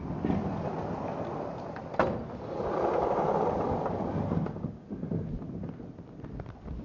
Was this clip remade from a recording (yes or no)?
yes